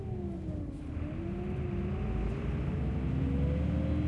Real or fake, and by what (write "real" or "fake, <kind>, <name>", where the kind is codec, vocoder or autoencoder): real